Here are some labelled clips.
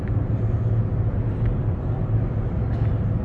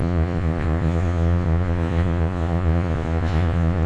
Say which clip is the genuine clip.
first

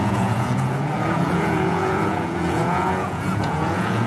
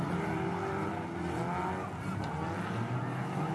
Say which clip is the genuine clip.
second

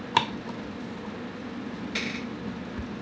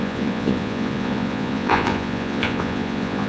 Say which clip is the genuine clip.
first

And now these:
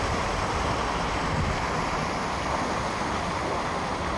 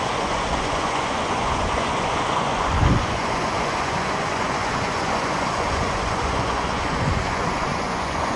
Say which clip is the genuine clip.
first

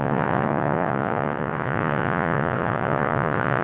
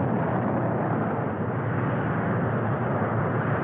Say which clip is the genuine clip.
second